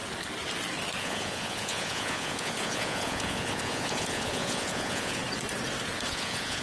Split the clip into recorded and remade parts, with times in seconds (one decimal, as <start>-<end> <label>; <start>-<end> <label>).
0.0-1.0 recorded; 1.0-5.2 remade; 5.2-6.1 recorded; 6.1-6.6 remade

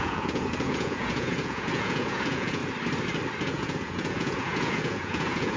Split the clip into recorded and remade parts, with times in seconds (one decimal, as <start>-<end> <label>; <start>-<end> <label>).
0.0-2.6 remade; 2.6-3.4 recorded; 3.4-5.6 remade

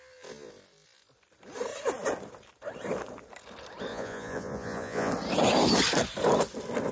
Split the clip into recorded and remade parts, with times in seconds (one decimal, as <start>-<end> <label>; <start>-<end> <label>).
0.0-3.9 recorded; 3.9-5.1 remade; 5.1-6.9 recorded

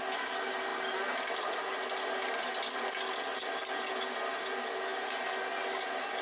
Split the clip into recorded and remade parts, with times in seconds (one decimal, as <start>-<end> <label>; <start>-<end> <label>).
0.0-6.2 recorded

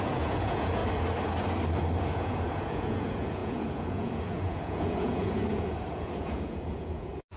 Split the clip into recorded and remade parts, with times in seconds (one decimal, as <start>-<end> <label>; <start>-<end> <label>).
0.0-0.8 remade; 0.8-2.0 recorded; 2.0-7.4 remade